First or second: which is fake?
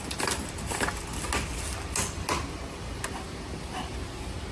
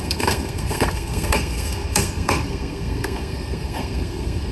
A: second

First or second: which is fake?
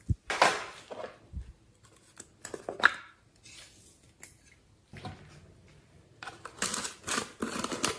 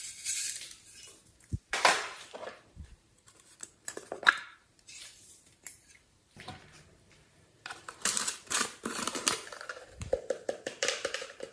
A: second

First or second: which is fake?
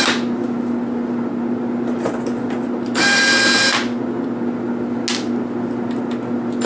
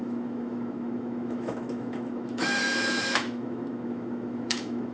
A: second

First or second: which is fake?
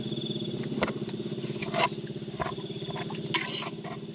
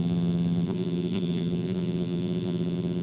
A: second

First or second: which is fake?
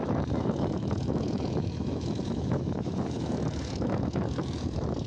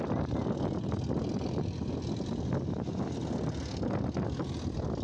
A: first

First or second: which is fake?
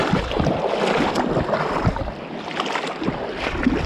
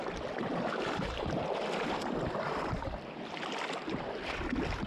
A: second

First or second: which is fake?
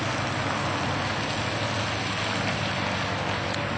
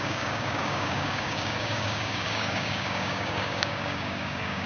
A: second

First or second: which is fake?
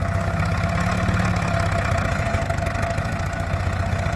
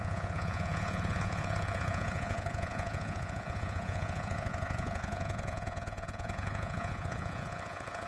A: second